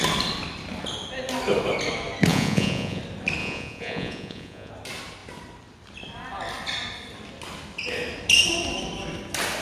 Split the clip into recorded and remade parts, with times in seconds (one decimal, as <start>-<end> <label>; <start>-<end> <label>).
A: 0.0-2.3 recorded; 2.3-3.0 remade; 3.0-3.4 recorded; 3.4-4.7 remade; 4.7-9.6 recorded